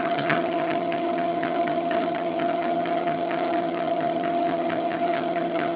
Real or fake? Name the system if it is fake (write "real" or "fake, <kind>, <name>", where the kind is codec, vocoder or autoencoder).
fake, vocoder, HiFi-GAN